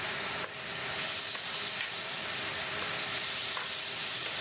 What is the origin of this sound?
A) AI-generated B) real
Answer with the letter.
B